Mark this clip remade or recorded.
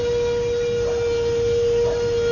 recorded